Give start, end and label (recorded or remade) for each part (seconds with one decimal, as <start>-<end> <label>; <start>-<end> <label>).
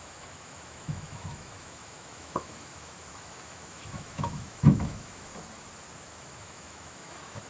0.0-5.3 remade; 5.3-6.0 recorded; 6.0-7.5 remade